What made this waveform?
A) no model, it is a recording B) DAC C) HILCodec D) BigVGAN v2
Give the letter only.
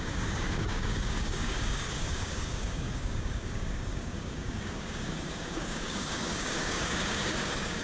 B